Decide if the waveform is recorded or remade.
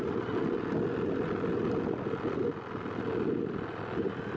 recorded